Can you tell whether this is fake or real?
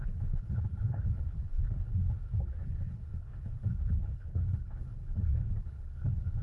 fake